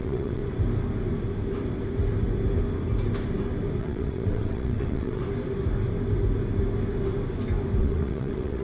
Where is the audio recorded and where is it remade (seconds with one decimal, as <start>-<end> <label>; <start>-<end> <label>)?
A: 0.0-0.4 remade; 0.4-3.8 recorded; 3.8-5.2 remade; 5.2-7.8 recorded; 7.8-8.6 remade